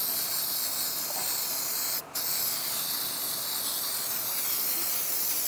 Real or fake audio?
real